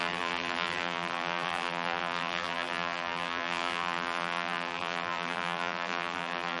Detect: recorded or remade remade